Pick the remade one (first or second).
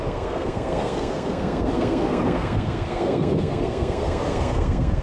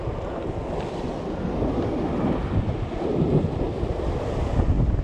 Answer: first